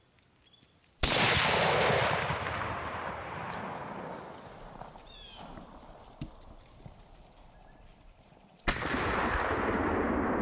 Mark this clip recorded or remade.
recorded